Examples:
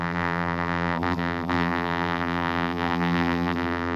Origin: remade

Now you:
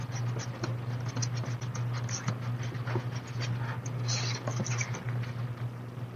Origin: recorded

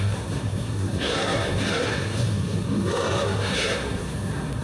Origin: remade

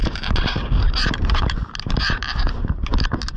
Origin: remade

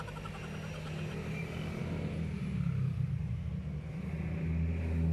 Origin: recorded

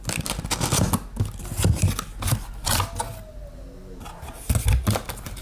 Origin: recorded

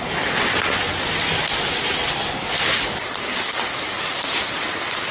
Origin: recorded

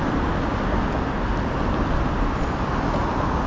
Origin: recorded